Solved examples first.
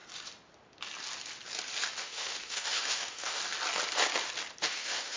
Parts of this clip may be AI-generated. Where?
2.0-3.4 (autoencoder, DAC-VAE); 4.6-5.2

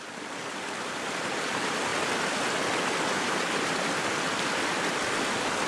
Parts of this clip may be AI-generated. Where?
0.0-1.9 (vocoder, BigVGAN v2); 5.3-5.7

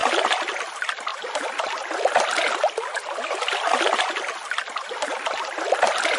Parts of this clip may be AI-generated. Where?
none

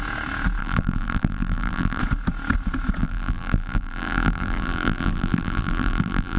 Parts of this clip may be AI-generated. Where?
0.6-2.0 (vocoder, BigVGAN v2); 3.0-6.4

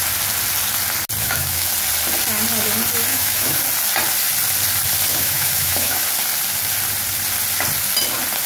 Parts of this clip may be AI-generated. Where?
1.2-1.7 (autoencoder, DAC-VAE); 3.1-3.6; 5.1-6.0

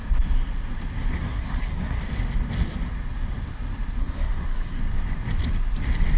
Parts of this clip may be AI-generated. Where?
1.2-2.0 (codec, SNAC); 4.0-4.8

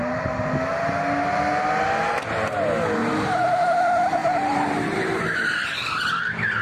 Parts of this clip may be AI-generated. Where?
3.0-3.8 (vocoder, BigVGAN v2); 4.2-5.2